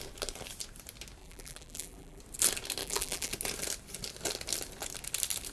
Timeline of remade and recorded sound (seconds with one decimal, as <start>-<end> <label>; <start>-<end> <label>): 0.0-1.2 recorded; 1.2-2.2 remade; 2.2-2.8 recorded; 2.8-3.3 remade; 3.3-5.5 recorded